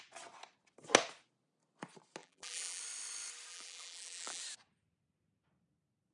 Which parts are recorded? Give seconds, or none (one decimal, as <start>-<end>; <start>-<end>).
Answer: 0.0-2.2; 2.8-3.5; 4.4-6.1